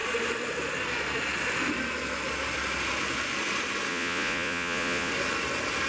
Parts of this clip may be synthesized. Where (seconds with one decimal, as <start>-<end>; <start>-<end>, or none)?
3.9-5.1